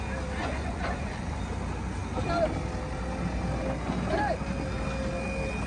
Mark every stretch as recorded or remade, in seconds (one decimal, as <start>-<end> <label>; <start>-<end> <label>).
0.0-0.4 recorded; 0.4-1.4 remade; 1.4-5.7 recorded